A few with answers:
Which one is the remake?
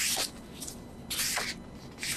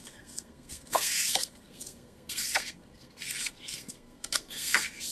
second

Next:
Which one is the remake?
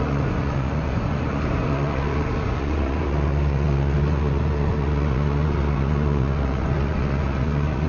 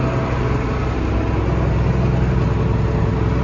first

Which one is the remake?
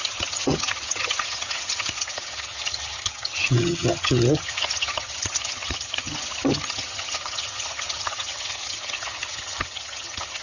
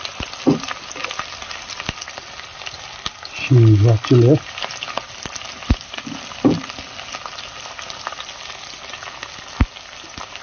first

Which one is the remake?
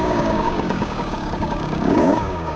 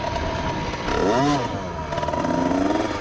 first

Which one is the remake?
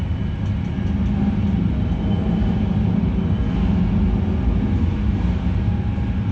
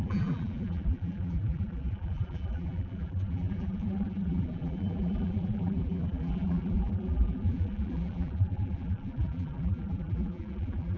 second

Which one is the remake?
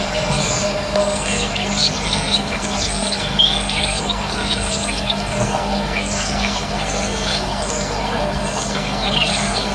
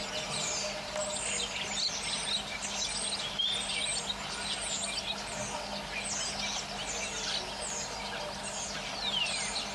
first